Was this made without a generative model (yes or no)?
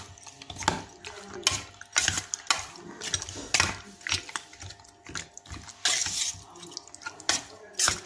yes